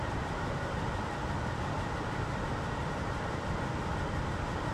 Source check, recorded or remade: remade